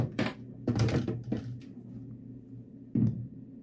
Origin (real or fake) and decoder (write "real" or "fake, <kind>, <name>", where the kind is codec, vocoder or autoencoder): fake, vocoder, BigVGAN v2